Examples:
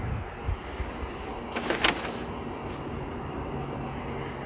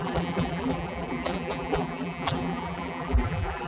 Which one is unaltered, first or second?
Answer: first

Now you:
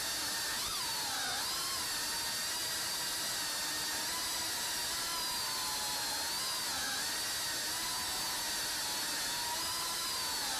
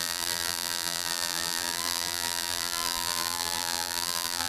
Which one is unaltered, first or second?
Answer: first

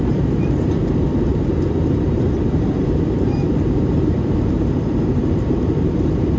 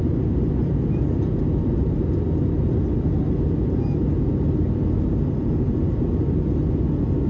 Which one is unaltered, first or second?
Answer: second